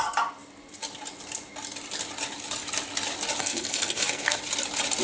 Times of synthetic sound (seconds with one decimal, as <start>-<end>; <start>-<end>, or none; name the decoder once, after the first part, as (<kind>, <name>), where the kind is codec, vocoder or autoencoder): 3.4-4.4 (codec, SNAC)